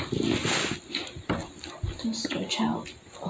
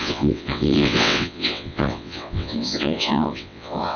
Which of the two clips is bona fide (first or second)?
first